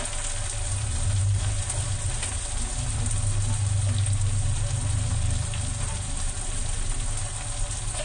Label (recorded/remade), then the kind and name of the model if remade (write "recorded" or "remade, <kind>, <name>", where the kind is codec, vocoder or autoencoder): recorded